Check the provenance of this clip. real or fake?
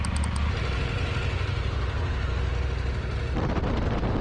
real